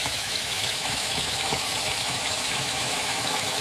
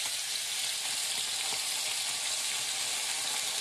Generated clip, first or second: first